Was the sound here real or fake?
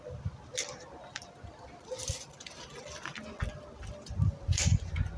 real